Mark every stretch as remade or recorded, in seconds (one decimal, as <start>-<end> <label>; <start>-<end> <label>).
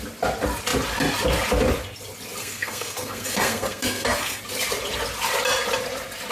0.0-2.4 recorded; 2.4-4.4 remade; 4.4-6.3 recorded